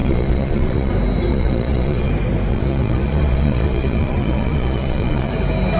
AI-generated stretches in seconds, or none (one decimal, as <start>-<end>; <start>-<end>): 0.0-0.9; 1.3-2.1; 2.5-5.3